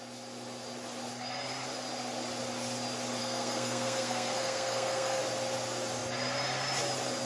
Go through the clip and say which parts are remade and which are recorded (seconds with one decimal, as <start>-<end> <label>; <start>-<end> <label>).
0.0-3.2 recorded; 3.2-5.2 remade; 5.2-7.2 recorded